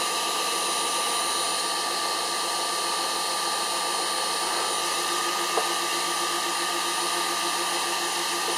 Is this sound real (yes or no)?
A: yes